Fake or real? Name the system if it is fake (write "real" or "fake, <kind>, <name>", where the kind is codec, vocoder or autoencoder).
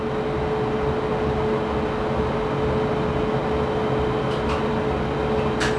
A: real